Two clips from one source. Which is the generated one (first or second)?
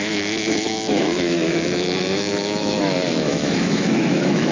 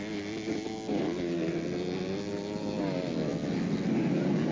first